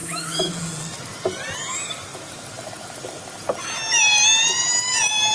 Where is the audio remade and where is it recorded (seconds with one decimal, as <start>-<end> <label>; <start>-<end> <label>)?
0.0-0.5 remade; 0.5-5.3 recorded